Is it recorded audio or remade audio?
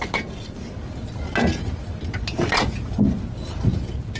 recorded